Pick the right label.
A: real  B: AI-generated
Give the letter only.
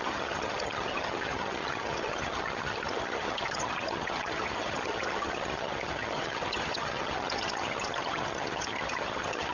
B